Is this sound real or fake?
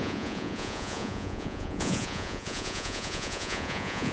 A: fake